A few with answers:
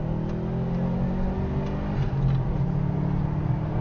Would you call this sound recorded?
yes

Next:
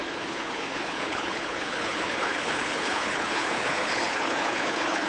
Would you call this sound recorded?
no